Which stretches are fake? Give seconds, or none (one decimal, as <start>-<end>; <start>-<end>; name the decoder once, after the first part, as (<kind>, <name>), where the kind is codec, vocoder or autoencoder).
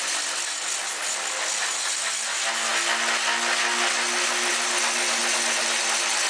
none